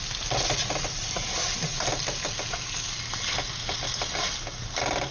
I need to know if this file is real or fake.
real